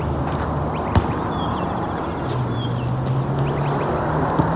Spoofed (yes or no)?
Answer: no